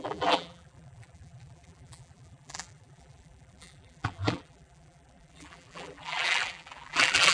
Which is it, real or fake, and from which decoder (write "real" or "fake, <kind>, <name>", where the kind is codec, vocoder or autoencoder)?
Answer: fake, vocoder, BigVGAN v2